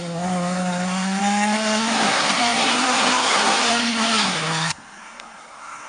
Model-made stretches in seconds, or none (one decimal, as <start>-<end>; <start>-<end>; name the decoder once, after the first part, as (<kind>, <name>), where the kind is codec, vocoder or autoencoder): 0.0-5.9 (codec, SNAC)